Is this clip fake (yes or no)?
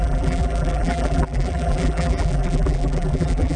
yes